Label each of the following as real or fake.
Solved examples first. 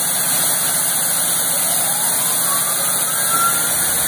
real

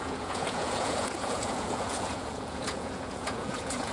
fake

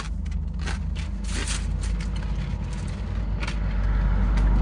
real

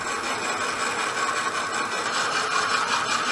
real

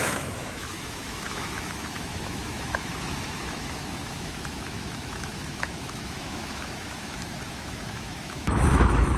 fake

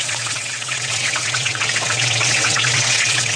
fake